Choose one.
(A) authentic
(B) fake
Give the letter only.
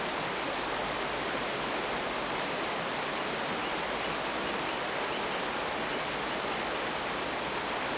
A